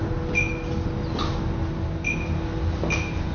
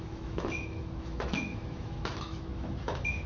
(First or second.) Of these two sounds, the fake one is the second